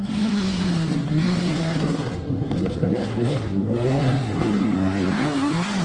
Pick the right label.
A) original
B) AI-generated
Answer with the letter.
B